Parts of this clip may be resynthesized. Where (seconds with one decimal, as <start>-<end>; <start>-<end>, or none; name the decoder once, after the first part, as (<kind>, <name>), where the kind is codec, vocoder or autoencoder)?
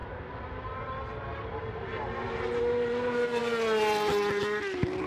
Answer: none